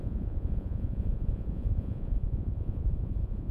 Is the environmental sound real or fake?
fake